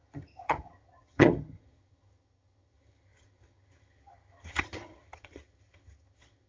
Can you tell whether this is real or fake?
fake